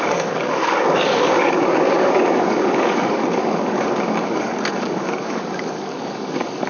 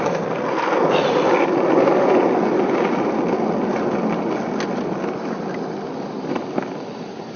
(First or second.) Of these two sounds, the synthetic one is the first